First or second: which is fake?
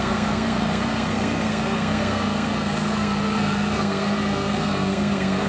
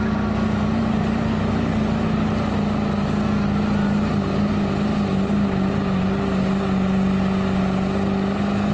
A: first